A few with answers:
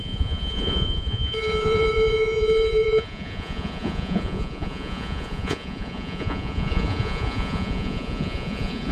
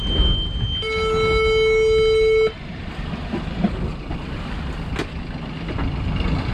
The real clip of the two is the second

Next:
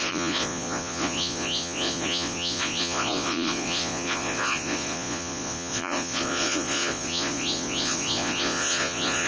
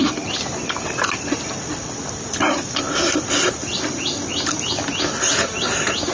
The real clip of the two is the second